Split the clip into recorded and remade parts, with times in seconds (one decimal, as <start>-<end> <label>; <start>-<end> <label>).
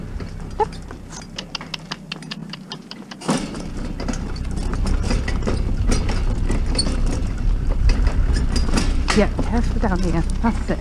0.0-2.4 recorded; 2.4-3.7 remade; 3.7-7.2 recorded; 7.2-8.0 remade; 8.0-10.8 recorded